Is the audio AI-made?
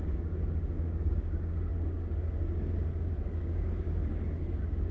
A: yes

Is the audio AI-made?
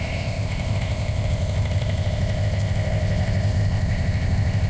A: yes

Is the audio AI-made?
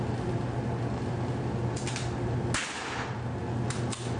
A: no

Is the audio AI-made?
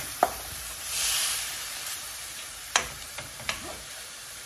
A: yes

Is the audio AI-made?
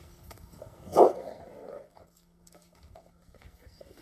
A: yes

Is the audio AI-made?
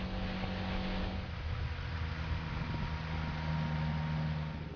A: no